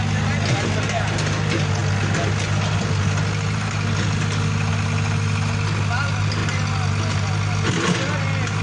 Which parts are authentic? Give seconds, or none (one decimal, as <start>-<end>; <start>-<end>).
0.0-8.6